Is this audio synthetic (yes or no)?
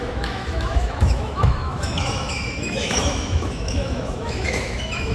yes